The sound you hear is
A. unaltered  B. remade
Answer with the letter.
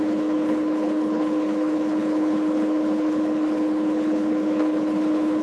B